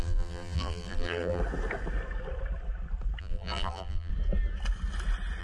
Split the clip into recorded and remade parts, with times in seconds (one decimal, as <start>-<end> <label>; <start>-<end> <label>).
0.0-1.4 remade; 1.4-3.2 recorded; 3.2-4.1 remade; 4.1-5.4 recorded